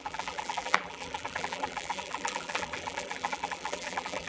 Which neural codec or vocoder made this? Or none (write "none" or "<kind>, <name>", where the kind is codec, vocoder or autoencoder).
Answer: vocoder, BigVGAN v2